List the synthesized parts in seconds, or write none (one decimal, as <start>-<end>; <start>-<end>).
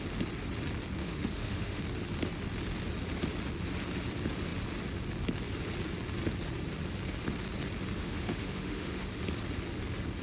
1.0-1.8; 8.0-9.2